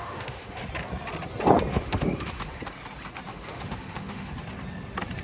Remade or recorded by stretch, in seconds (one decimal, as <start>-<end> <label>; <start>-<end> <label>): 0.0-0.6 remade; 0.6-1.7 recorded; 1.7-2.6 remade; 2.6-3.3 recorded; 3.3-4.3 remade; 4.3-5.2 recorded